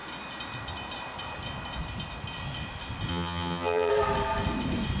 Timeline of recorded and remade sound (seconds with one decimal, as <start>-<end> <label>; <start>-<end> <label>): 0.0-3.1 recorded; 3.1-3.9 remade; 3.9-5.0 recorded